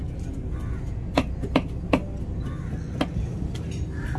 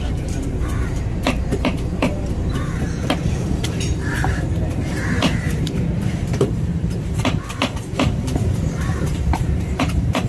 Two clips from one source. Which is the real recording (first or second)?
first